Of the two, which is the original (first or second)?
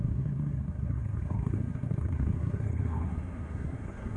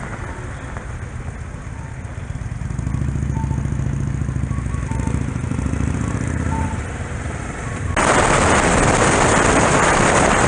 second